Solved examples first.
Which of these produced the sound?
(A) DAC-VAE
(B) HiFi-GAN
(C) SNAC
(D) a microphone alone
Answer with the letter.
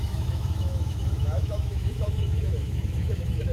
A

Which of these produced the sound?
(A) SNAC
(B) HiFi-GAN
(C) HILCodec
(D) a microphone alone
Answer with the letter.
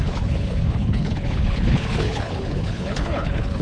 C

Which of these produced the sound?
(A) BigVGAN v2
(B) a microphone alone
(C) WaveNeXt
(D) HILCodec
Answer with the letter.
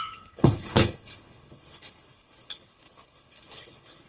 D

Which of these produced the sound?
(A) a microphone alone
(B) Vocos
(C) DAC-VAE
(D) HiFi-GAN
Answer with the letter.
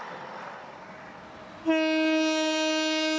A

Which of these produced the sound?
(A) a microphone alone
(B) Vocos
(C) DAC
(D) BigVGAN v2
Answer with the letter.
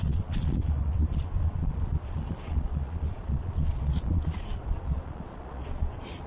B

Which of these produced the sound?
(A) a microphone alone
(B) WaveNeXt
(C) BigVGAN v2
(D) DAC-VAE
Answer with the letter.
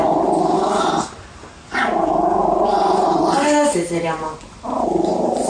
A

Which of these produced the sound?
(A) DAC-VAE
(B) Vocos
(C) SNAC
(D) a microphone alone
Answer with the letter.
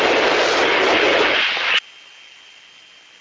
D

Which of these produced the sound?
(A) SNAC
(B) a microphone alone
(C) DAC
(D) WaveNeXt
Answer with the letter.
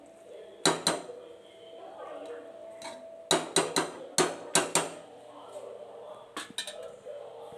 B